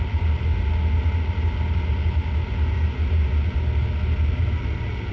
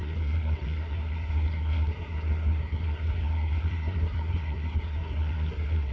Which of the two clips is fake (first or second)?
second